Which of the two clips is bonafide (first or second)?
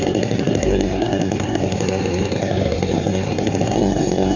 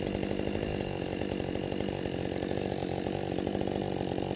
second